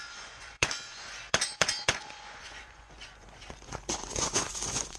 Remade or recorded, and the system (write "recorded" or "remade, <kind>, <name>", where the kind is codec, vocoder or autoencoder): remade, vocoder, Vocos